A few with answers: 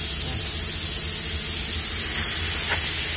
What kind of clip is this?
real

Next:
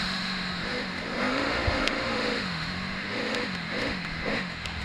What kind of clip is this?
fake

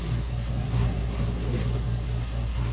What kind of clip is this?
fake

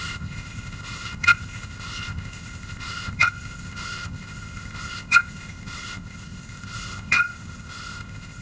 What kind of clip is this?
fake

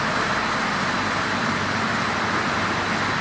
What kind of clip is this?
real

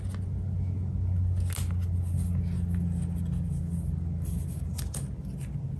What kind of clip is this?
real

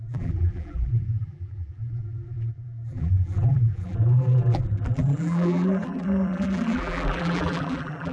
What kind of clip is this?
fake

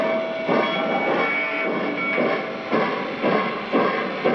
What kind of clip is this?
real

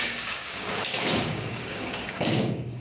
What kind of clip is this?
fake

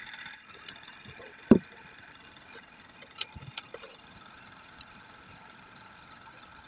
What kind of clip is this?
real